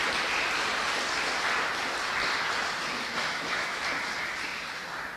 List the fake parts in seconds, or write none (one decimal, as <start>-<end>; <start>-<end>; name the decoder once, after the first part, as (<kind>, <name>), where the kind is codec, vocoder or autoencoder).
3.2-3.8 (autoencoder, DAC-VAE)